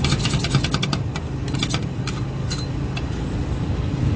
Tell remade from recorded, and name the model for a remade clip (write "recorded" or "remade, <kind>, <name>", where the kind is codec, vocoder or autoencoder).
recorded